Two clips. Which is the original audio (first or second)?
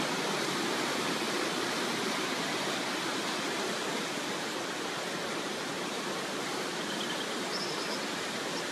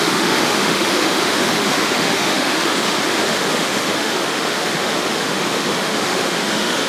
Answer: first